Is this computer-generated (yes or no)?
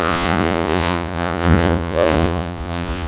yes